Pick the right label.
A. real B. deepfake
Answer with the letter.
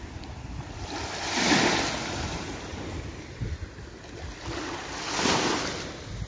A